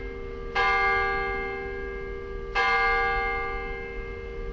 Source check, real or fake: real